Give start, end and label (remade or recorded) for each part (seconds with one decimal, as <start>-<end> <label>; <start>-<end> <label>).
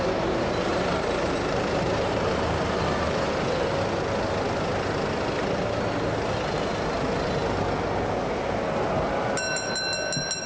0.0-0.7 recorded; 0.7-3.8 remade; 3.8-10.5 recorded